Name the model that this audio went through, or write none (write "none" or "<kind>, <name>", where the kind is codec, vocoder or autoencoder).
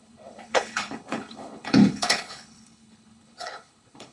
codec, HILCodec